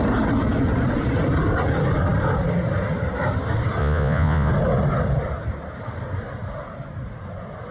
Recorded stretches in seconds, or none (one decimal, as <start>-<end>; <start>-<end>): 0.0-3.8; 4.5-7.7